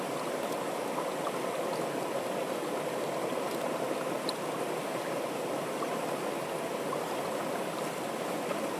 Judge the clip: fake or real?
real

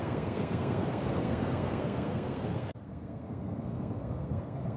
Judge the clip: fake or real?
fake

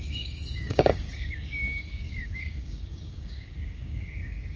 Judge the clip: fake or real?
fake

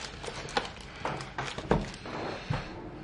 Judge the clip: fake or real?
real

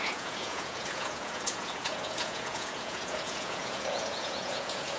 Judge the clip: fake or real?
fake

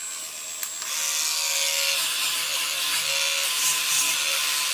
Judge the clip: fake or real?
real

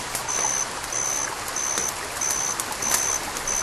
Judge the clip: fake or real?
real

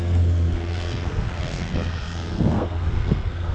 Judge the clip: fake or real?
fake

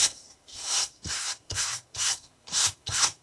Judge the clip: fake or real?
fake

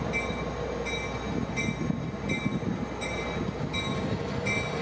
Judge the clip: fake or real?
real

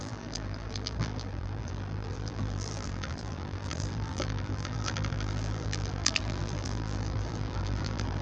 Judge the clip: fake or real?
fake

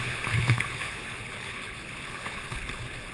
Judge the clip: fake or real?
fake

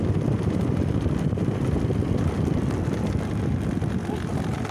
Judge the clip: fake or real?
real